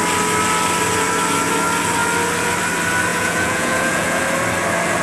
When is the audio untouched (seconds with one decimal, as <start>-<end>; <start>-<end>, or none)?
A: 0.0-3.1; 4.2-5.0